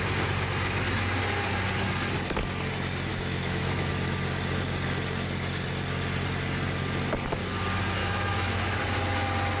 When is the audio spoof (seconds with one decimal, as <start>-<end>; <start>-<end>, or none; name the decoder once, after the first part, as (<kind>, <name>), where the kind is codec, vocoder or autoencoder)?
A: 3.1-3.9 (autoencoder, DAC-VAE); 8.0-8.8